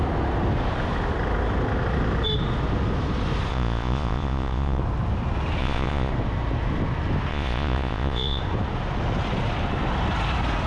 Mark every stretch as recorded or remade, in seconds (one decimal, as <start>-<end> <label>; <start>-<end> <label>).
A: 0.0-3.5 recorded; 3.5-4.8 remade; 4.8-5.6 recorded; 5.6-6.1 remade; 6.1-7.3 recorded; 7.3-8.4 remade; 8.4-10.7 recorded